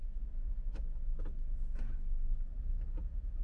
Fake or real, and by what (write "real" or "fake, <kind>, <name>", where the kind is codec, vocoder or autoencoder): real